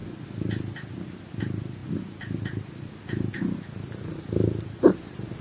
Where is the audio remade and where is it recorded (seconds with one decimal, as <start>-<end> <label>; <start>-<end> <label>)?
0.0-5.4 recorded